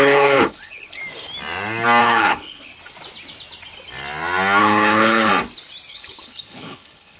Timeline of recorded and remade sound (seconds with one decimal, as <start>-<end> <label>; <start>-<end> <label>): 0.0-1.0 remade; 1.0-2.0 recorded; 2.0-2.7 remade; 2.7-4.6 recorded; 4.6-5.3 remade; 5.3-5.9 recorded; 5.9-7.2 remade